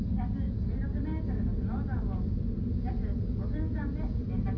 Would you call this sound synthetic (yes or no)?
no